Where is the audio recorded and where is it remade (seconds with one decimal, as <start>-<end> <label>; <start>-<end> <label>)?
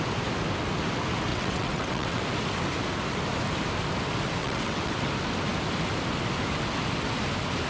0.0-1.3 recorded; 1.3-2.2 remade; 2.2-4.4 recorded; 4.4-4.9 remade; 4.9-7.7 recorded